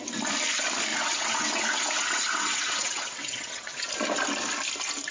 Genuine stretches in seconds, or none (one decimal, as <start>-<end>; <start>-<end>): 0.0-0.9; 3.9-5.1